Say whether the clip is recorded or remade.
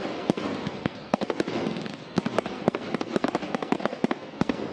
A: remade